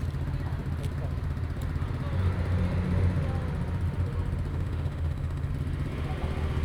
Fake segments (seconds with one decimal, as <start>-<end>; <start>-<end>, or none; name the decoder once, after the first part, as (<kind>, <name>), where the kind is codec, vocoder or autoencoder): 4.5-5.5 (autoencoder, DAC-VAE)